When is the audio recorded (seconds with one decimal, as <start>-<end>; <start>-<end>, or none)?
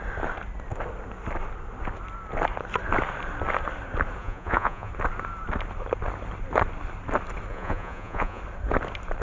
0.0-4.2; 4.9-7.5; 8.4-9.2